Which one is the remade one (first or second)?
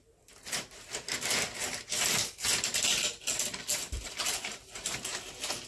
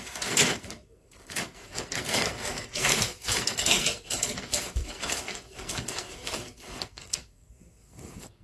second